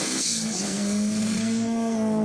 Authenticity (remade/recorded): remade